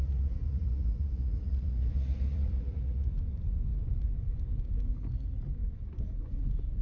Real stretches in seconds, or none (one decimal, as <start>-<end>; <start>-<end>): 3.1-6.8